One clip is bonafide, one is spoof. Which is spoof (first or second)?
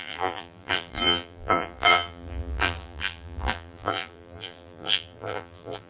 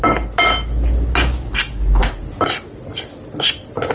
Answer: first